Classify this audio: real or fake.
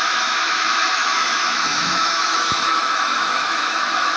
fake